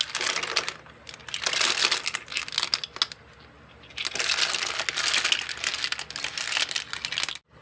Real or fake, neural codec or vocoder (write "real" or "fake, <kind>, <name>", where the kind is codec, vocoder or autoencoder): real